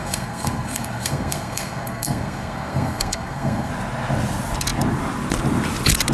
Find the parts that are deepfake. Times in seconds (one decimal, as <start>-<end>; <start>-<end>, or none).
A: 0.0-3.7